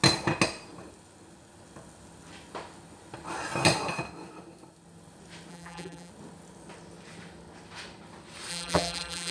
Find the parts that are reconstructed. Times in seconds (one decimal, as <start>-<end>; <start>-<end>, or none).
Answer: 5.5-6.1; 8.5-9.3